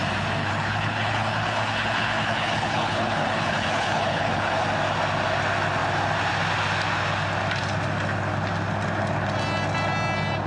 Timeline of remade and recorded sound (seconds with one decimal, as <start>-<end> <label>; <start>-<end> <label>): 0.0-0.4 recorded; 0.4-4.6 remade; 4.6-10.5 recorded